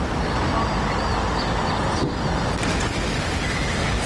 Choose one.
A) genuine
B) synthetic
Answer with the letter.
A